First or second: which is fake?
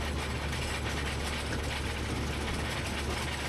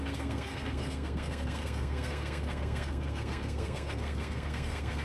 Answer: second